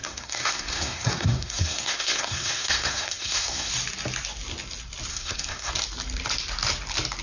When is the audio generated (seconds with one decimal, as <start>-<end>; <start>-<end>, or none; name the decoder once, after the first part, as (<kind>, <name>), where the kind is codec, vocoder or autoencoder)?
0.0-3.7 (codec, SNAC); 5.1-5.7